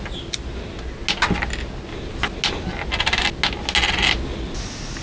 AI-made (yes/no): no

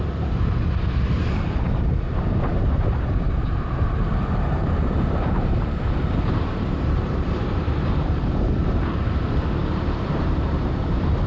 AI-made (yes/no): yes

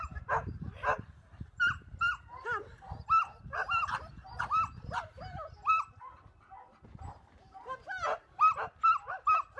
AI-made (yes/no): no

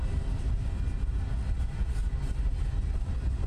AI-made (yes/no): no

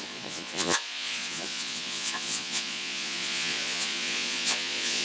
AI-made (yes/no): yes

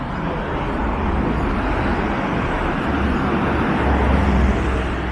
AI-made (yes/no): no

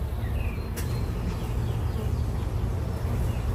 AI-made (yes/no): no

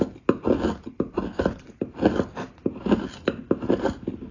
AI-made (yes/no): no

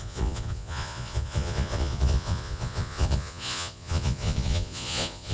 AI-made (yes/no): yes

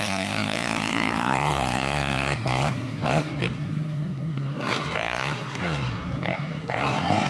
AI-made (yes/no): yes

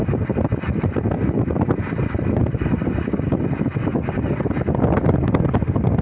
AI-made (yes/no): no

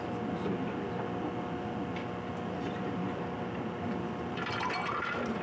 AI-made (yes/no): no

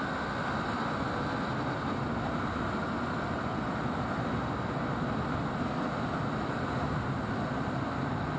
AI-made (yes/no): no